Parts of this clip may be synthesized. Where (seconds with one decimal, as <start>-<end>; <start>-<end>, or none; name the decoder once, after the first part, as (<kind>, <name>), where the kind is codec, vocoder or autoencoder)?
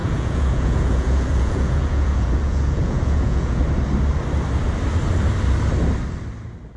0.0-3.6 (vocoder, Vocos)